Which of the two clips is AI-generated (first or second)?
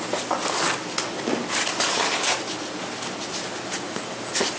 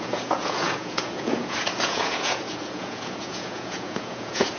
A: second